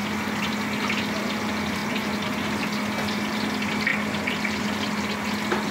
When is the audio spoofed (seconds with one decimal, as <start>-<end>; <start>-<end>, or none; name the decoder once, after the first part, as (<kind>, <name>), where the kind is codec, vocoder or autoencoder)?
none